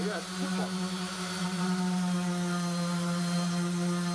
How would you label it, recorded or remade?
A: recorded